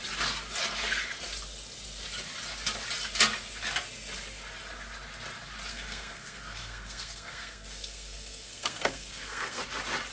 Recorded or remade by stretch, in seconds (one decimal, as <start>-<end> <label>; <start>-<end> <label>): 0.0-5.7 recorded; 5.7-9.6 remade; 9.6-10.1 recorded